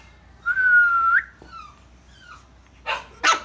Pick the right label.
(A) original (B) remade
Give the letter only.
A